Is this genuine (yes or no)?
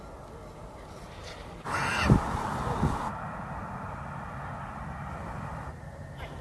yes